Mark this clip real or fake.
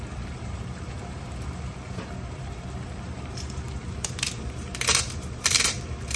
fake